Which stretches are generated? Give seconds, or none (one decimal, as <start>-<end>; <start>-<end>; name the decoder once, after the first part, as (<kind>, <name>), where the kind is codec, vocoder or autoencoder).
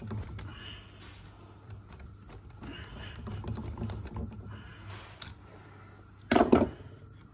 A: none